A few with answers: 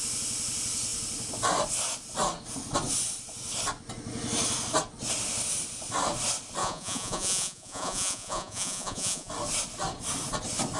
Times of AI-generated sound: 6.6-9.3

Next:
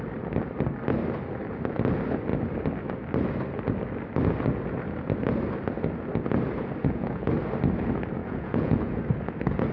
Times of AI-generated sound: 6.8-7.3; 8.2-9.0

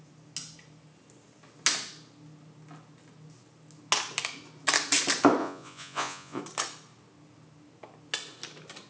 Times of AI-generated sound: 5.4-6.4

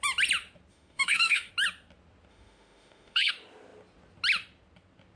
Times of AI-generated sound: 0.7-1.5; 2.3-3.3

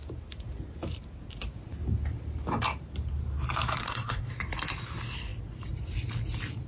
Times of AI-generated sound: 3.8-4.3

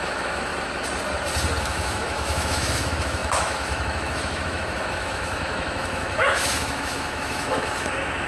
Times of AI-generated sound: 0.0-0.5; 1.6-8.3

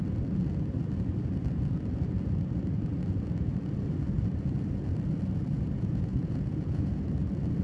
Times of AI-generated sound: 5.5-6.9